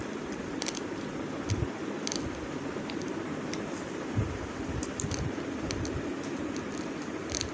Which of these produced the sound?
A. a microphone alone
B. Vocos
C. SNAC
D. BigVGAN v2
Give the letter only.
A